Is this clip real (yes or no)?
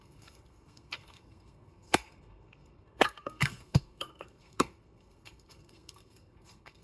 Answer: no